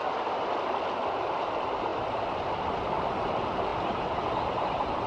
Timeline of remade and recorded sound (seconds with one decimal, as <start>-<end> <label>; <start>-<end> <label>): 0.0-3.7 remade; 3.7-4.3 recorded; 4.3-5.1 remade